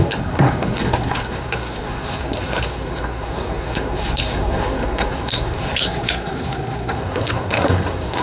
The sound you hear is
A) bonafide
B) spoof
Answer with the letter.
B